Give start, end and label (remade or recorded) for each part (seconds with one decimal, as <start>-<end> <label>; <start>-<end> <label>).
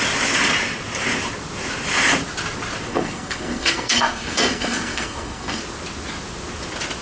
0.0-2.9 recorded; 2.9-5.6 remade; 5.6-7.0 recorded